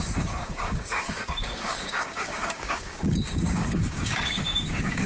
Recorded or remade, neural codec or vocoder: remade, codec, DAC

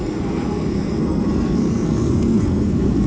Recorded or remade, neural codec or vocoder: remade, codec, SNAC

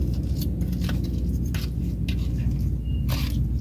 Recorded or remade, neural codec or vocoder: recorded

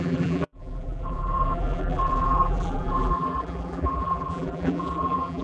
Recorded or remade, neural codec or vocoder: remade, vocoder, BigVGAN v2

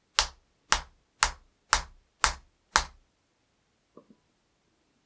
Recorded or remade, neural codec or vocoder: recorded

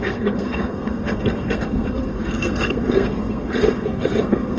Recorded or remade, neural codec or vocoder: remade, codec, SNAC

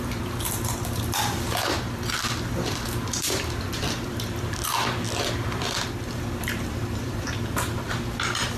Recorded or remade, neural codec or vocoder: remade, vocoder, BigVGAN v2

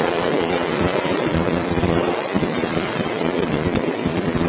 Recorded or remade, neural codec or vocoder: remade, vocoder, Vocos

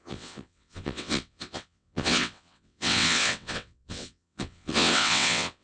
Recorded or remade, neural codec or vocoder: remade, vocoder, WaveNeXt